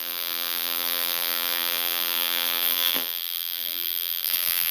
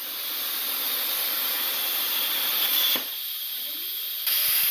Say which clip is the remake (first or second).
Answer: first